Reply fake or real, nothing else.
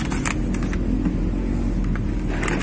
real